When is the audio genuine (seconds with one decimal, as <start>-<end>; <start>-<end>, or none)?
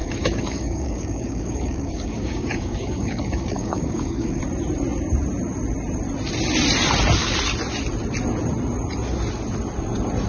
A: 4.4-10.3